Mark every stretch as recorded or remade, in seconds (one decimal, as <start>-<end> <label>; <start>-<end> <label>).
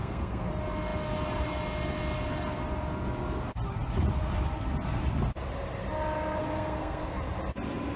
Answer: 0.0-0.5 remade; 0.5-6.4 recorded; 6.4-7.2 remade; 7.2-8.0 recorded